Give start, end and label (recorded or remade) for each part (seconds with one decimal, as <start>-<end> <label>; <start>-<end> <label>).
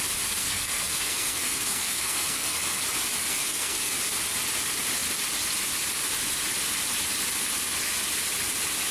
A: 0.0-0.4 recorded; 0.4-2.8 remade; 2.8-3.2 recorded; 3.2-4.0 remade; 4.0-8.9 recorded